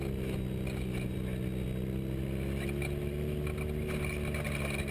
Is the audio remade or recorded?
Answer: recorded